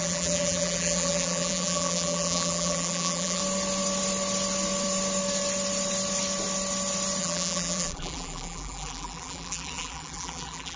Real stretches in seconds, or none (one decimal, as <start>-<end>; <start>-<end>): 3.4-7.2